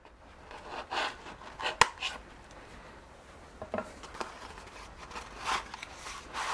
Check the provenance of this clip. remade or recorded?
recorded